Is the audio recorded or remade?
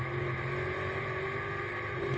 recorded